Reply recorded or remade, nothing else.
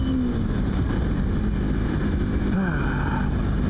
recorded